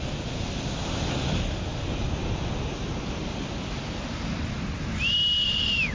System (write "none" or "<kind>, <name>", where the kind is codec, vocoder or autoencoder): none